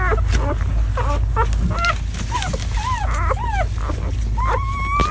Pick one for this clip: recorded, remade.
recorded